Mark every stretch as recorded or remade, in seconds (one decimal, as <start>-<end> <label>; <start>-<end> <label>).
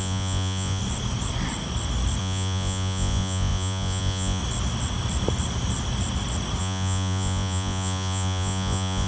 0.0-0.8 remade; 0.8-2.2 recorded; 2.2-4.4 remade; 4.4-6.6 recorded; 6.6-9.1 remade